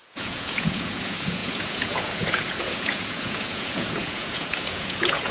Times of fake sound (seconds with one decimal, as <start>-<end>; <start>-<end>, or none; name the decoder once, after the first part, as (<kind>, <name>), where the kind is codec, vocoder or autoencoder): 0.0-5.3 (vocoder, Vocos)